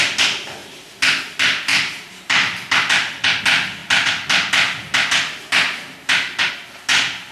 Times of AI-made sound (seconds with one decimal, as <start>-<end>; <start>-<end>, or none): 0.6-1.2; 1.7-3.4